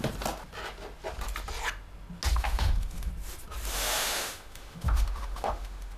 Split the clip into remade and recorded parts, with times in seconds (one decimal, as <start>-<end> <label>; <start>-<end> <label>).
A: 0.0-2.3 recorded; 2.3-3.1 remade; 3.1-3.7 recorded; 3.7-6.0 remade